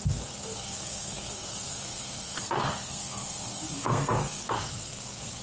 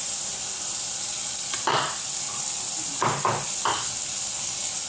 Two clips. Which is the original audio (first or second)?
second